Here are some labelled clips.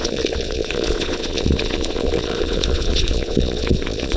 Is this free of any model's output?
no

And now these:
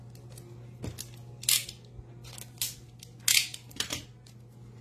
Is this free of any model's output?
yes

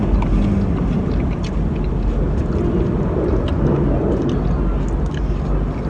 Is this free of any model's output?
yes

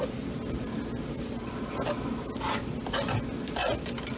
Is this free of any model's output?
yes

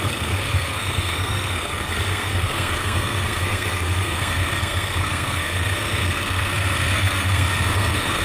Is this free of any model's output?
no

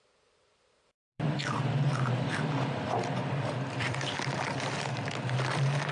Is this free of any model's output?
no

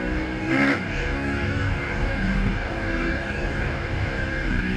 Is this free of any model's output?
no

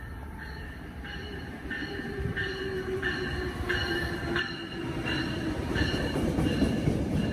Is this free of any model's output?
no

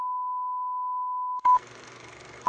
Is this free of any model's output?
no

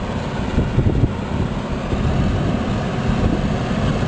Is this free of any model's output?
yes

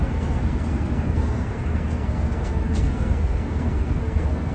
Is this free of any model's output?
no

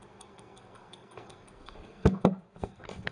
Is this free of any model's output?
no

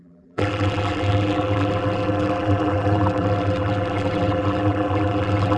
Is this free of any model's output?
no